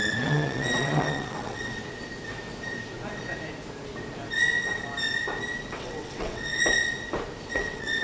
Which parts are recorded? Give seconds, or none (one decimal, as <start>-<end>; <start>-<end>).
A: 1.8-5.7; 6.5-7.5